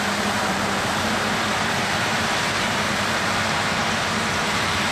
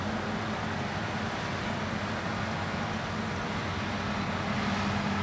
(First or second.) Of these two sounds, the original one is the second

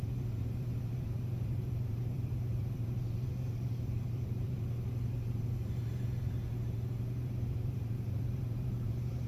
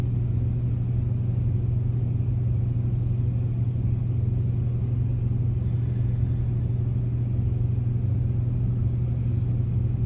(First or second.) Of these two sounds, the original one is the second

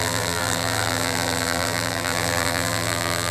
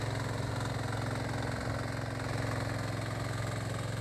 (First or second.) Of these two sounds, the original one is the second